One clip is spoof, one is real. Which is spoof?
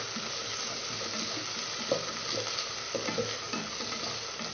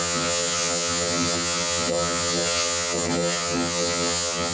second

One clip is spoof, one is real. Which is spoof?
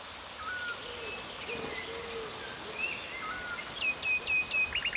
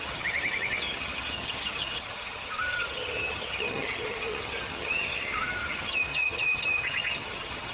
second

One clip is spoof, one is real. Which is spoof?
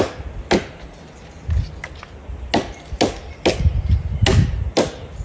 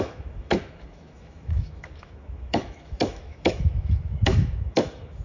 second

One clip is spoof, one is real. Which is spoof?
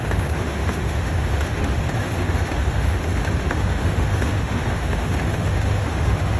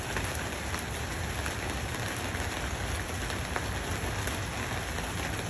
first